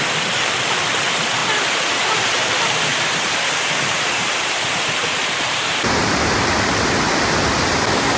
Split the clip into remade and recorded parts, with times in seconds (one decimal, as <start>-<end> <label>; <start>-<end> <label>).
0.0-1.4 recorded; 1.4-2.5 remade; 2.5-2.9 recorded; 2.9-6.7 remade; 6.7-8.2 recorded